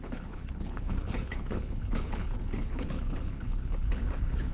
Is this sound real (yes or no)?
no